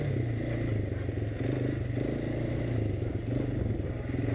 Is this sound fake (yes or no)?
no